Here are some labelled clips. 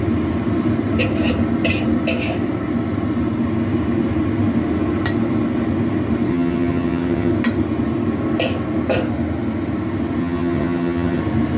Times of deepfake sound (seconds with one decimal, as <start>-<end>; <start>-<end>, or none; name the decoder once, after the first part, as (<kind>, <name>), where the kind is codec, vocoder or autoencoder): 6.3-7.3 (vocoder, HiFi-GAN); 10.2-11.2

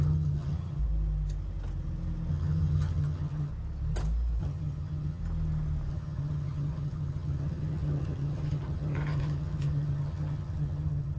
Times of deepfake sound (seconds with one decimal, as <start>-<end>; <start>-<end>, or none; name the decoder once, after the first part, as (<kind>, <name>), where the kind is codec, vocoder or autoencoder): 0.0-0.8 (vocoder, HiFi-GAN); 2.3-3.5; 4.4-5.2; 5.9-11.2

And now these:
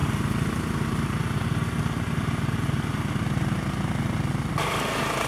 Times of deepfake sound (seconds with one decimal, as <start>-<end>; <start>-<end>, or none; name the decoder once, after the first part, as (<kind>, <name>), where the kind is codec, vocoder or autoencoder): none

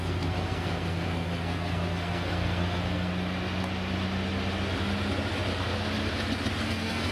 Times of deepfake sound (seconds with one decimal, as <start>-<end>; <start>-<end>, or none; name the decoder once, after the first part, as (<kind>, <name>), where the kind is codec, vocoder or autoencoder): 0.0-3.1 (codec, SNAC); 6.6-7.1

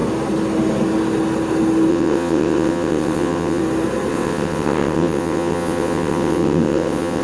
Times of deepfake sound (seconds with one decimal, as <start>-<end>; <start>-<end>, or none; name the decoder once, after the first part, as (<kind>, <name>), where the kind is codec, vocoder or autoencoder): 1.9-3.6 (vocoder, WaveNeXt); 4.1-7.2

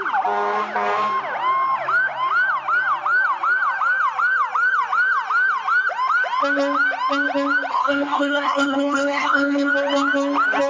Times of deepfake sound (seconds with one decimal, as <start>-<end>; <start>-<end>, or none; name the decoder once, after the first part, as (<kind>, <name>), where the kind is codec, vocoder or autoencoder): 7.7-9.7 (codec, SNAC)